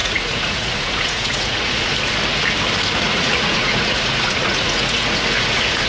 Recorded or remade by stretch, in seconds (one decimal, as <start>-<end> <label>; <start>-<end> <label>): 0.0-1.9 remade; 1.9-2.9 recorded; 2.9-5.9 remade